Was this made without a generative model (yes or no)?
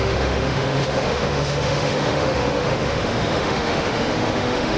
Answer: no